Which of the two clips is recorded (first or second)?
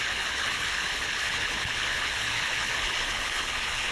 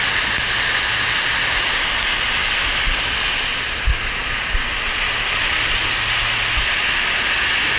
second